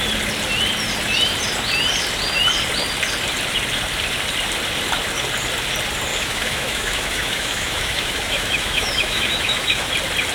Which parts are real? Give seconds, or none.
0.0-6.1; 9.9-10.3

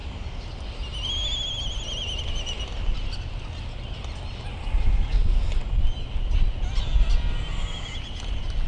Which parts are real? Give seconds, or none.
0.0-8.7

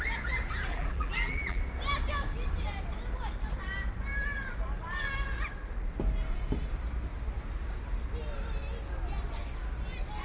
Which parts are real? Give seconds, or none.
0.0-0.7; 1.6-10.2

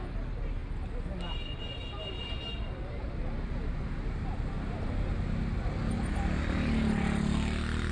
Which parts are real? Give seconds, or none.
0.0-7.9